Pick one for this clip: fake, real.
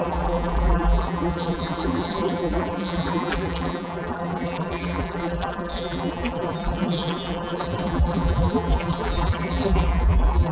fake